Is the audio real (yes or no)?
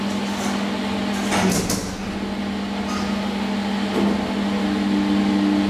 yes